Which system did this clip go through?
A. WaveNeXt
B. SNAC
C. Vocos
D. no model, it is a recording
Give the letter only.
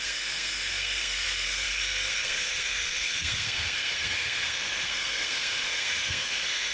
B